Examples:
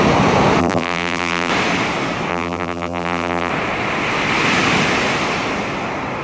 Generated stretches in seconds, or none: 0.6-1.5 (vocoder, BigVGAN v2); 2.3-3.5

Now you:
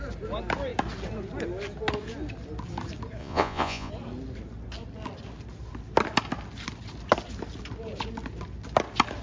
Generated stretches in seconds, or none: 3.2-3.9 (vocoder, Vocos)